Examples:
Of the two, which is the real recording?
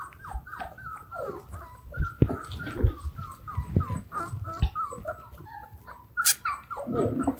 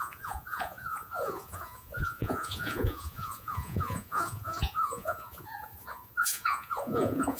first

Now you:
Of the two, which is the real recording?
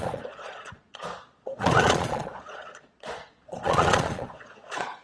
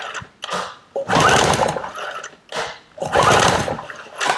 second